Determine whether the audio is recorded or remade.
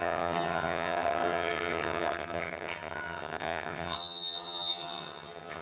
remade